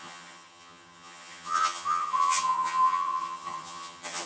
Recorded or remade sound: remade